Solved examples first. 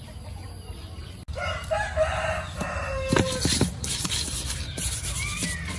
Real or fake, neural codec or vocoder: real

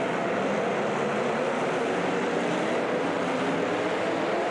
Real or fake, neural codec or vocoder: real